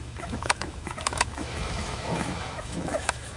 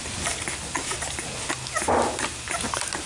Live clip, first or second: second